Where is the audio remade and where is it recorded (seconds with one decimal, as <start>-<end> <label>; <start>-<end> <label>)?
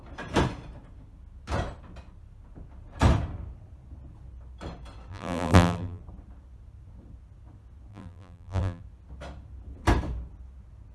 0.0-5.1 recorded; 5.1-6.0 remade; 6.0-7.9 recorded; 7.9-8.8 remade; 8.8-10.9 recorded